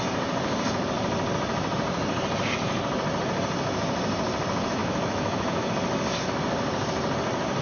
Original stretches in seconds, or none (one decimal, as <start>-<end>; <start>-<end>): 0.0-4.8; 5.7-7.6